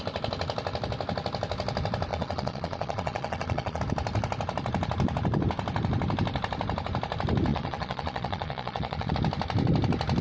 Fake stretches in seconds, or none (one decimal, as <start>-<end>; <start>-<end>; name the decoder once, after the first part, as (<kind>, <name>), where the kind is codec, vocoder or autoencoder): 2.1-3.8 (vocoder, Vocos); 7.5-9.1